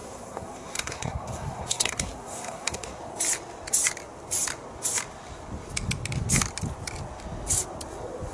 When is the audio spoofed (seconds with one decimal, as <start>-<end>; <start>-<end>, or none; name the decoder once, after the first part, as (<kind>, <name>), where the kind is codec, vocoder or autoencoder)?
0.0-3.0 (codec, SNAC)